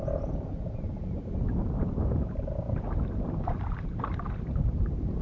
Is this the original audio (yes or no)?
no